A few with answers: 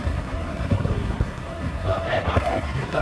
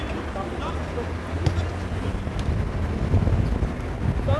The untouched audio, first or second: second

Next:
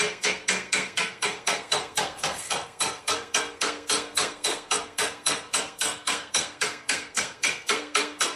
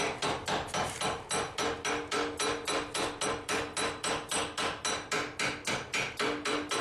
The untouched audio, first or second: second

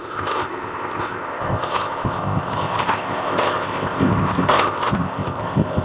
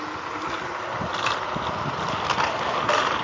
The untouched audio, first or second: second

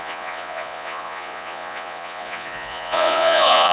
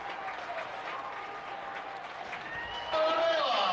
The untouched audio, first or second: second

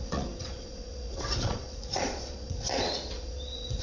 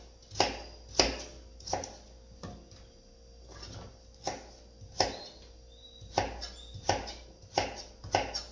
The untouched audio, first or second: second